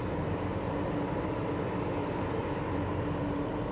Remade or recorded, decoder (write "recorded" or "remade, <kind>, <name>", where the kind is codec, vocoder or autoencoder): recorded